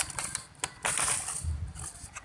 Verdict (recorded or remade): recorded